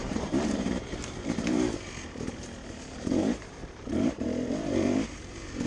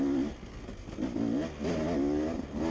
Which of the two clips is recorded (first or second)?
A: second